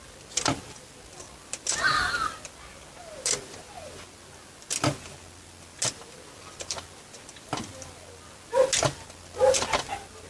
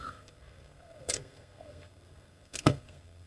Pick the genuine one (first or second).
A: first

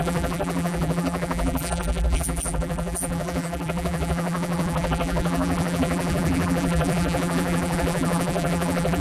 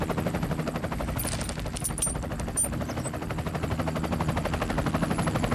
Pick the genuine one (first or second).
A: second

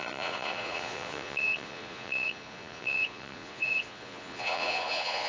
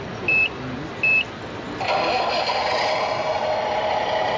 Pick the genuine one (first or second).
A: second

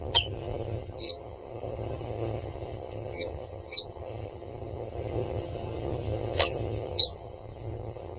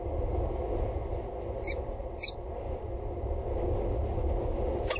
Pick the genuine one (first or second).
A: second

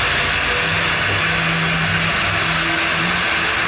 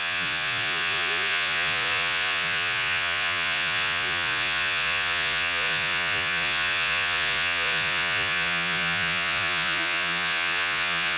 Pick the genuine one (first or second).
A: first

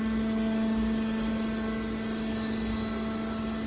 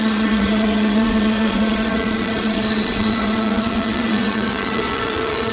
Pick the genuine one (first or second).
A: first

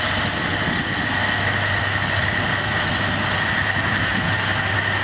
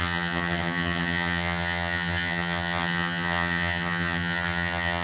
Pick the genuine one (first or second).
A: first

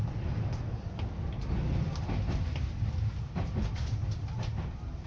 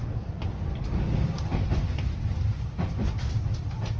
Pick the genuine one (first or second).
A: first